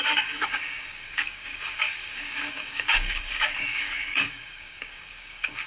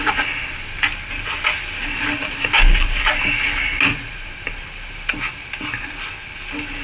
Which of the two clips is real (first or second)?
second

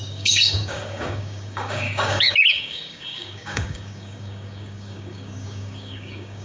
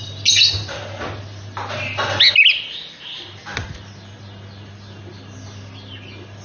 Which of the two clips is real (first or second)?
second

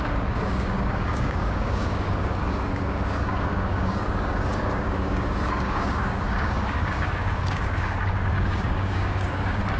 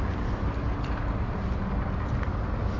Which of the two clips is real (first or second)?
second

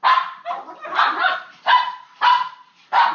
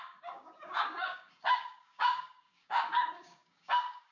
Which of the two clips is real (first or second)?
first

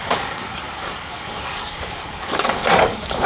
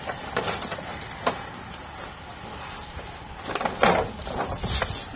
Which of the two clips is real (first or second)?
second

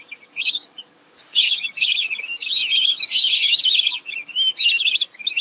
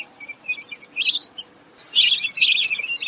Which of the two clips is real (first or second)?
second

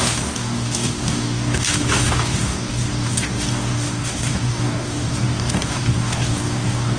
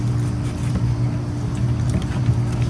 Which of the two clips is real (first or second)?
second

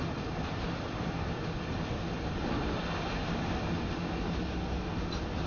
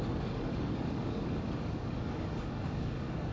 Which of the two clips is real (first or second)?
first